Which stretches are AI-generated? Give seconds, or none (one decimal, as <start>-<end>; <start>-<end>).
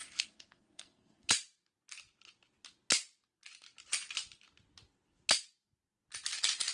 0.0-1.3